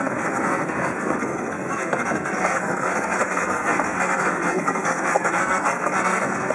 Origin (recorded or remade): remade